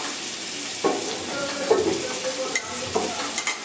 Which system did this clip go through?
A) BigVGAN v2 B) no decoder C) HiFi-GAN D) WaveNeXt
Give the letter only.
B